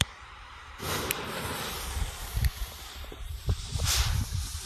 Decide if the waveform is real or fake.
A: fake